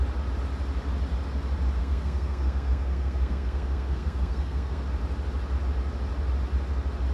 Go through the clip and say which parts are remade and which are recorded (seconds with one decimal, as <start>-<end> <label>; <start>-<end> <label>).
0.0-1.8 recorded; 1.8-4.8 remade; 4.8-7.1 recorded